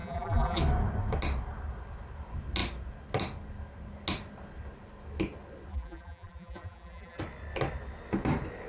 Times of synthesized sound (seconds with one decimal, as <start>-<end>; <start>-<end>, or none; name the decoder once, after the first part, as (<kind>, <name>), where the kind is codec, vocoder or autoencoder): 0.0-0.6 (vocoder, BigVGAN v2); 5.7-7.2